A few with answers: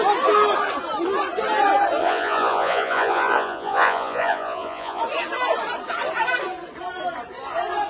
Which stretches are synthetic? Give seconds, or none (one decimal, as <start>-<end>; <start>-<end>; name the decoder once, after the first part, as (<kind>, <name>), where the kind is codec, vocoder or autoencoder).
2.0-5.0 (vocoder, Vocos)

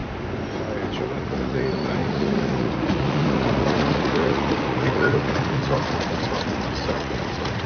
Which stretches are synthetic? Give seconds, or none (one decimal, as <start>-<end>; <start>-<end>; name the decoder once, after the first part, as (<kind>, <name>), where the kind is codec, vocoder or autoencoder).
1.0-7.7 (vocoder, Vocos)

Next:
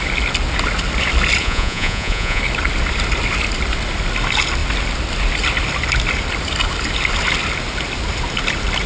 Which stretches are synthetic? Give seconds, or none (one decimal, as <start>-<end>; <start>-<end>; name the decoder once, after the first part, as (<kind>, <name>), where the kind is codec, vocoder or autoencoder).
1.4-2.4 (vocoder, Vocos)

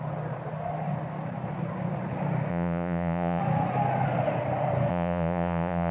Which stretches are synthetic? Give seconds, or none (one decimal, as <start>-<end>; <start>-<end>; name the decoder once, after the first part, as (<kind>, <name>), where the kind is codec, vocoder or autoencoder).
2.5-3.4 (vocoder, Vocos); 4.9-5.9

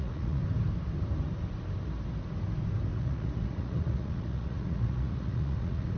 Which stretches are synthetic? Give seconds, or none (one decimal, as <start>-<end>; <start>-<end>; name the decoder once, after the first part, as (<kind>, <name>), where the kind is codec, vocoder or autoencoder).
0.0-0.4 (vocoder, Vocos); 2.9-6.0